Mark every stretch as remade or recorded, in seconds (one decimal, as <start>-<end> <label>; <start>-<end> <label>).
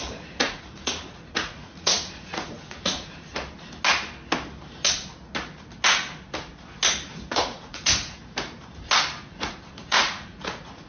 0.0-3.3 remade; 3.3-7.3 recorded; 7.3-8.2 remade; 8.2-9.2 recorded; 9.2-10.9 remade